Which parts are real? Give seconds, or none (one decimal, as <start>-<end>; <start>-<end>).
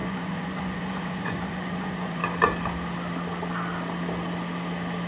2.2-5.1